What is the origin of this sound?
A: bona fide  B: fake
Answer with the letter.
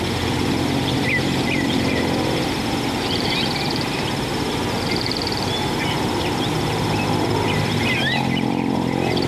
B